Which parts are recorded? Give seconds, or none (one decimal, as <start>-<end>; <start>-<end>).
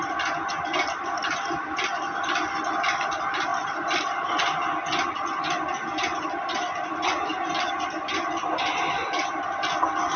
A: 0.0-3.5; 4.3-7.3; 9.4-10.2